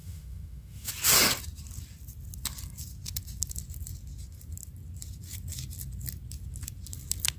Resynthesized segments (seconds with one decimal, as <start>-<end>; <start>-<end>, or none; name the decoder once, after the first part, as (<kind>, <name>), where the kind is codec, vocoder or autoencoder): 0.0-0.9 (autoencoder, DAC-VAE)